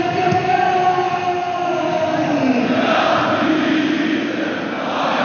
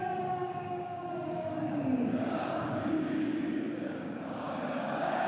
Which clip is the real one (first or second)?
first